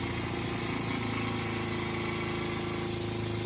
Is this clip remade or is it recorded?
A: recorded